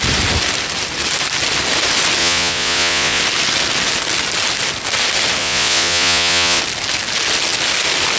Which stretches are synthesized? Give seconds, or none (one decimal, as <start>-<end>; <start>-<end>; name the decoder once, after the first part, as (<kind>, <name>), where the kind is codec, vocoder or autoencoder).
2.2-3.2 (vocoder, Vocos); 5.4-6.6